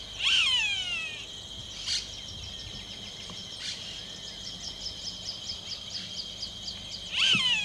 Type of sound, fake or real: real